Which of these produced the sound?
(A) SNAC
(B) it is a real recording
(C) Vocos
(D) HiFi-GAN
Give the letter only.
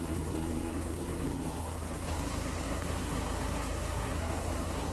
A